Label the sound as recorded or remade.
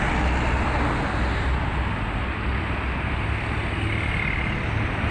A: recorded